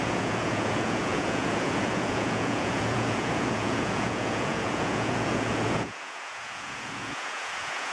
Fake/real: fake